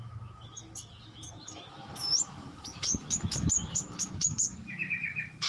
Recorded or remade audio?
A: remade